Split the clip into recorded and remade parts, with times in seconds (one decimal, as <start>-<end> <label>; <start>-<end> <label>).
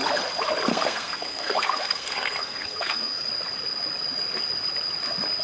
0.0-0.7 recorded; 0.7-3.3 remade; 3.3-5.4 recorded